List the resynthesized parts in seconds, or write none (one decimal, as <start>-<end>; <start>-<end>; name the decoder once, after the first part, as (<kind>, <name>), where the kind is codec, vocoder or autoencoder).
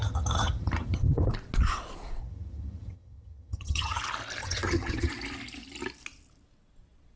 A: 0.0-1.3 (vocoder, HiFi-GAN); 2.2-4.0; 4.4-5.1